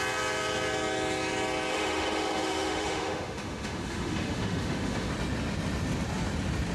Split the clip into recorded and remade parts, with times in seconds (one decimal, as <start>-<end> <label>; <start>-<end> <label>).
0.0-1.7 recorded; 1.7-5.1 remade; 5.1-6.7 recorded